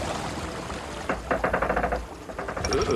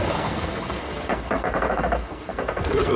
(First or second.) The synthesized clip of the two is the second